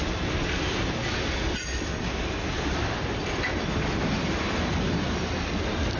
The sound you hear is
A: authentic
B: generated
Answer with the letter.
B